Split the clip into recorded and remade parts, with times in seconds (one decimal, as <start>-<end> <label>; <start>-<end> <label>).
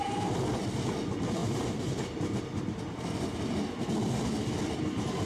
0.0-1.4 recorded; 1.4-2.4 remade; 2.4-5.3 recorded